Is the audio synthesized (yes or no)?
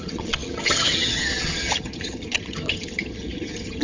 yes